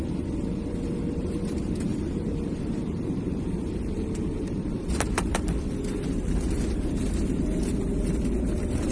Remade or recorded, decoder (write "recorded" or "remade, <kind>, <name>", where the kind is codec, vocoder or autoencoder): remade, vocoder, BigVGAN v2